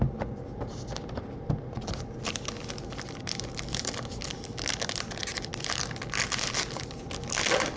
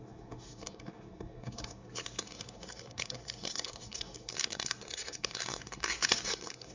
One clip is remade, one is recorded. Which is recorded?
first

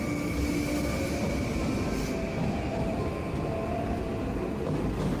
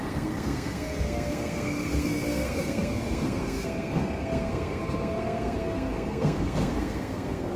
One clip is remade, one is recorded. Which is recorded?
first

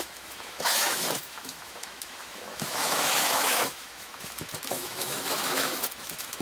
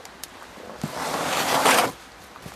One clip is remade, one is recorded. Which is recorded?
second